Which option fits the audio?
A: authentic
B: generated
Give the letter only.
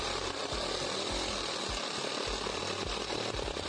A